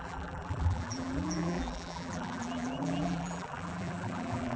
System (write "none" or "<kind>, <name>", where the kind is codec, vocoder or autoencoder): vocoder, BigVGAN v2